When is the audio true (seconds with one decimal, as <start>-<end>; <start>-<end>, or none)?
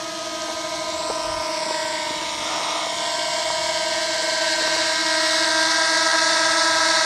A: 0.0-7.0